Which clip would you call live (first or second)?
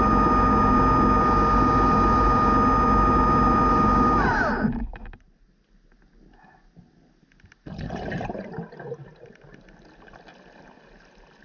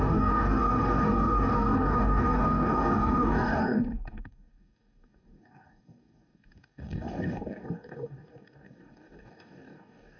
first